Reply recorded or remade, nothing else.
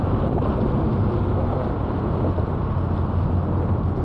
recorded